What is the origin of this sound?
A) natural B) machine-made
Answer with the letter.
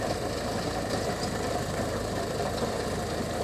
B